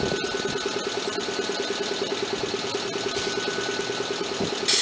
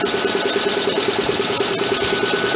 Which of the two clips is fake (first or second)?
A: second